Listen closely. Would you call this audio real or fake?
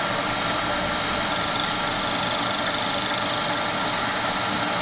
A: real